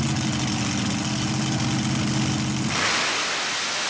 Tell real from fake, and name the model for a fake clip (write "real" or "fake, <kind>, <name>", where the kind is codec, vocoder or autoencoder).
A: real